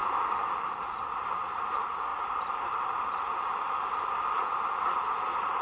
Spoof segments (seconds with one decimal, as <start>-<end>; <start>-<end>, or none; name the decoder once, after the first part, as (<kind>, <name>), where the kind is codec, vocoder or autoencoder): 0.0-0.7 (vocoder, BigVGAN v2); 2.1-3.0